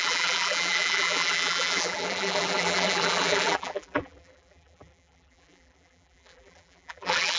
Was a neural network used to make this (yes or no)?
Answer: yes